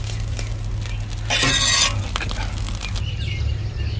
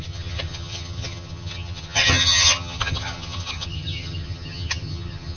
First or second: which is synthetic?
second